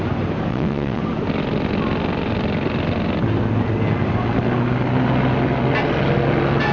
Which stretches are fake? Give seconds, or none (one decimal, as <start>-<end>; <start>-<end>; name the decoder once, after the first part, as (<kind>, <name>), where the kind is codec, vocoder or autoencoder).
0.5-1.0 (vocoder, WaveNeXt)